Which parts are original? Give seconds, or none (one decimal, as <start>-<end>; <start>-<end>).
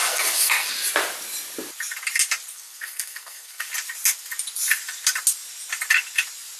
0.7-2.5; 3.7-6.6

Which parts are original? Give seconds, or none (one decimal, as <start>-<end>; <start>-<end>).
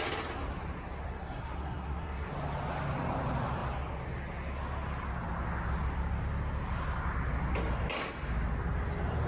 0.0-1.1; 2.3-9.3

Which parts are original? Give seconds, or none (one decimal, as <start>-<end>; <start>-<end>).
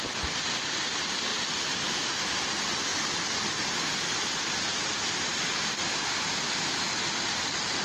1.3-2.4; 2.9-7.0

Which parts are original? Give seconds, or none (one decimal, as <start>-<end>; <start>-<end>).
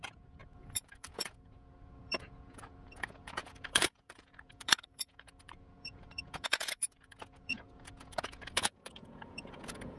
none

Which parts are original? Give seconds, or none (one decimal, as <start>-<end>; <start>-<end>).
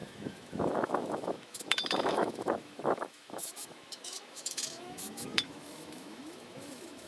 none